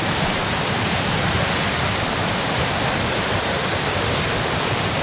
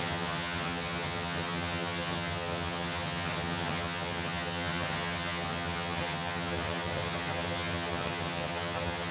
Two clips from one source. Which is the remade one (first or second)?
second